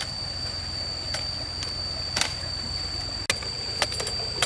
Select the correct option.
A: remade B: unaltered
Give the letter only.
B